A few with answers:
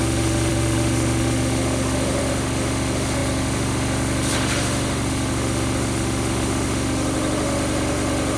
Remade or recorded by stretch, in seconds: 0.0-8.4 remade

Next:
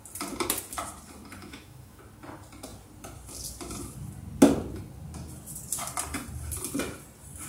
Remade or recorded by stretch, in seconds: 0.0-1.4 recorded; 1.4-2.0 remade; 2.0-7.5 recorded